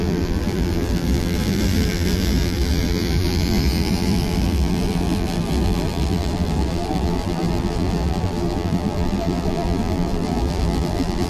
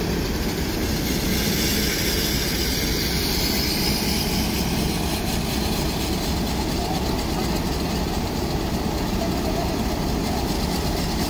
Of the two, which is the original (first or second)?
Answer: second